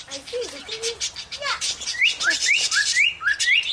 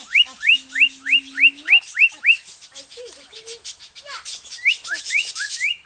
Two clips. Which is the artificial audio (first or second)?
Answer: second